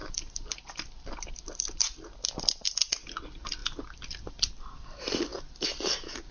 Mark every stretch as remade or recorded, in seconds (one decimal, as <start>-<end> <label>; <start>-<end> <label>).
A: 0.0-1.3 remade; 1.3-6.3 recorded